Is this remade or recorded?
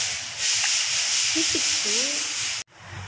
recorded